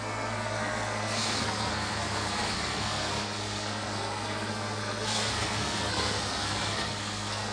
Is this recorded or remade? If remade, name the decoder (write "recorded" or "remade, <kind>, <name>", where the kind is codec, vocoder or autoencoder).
remade, codec, SNAC